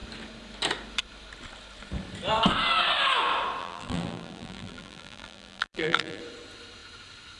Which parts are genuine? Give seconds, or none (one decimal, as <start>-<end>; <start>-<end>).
0.0-3.6; 6.2-7.4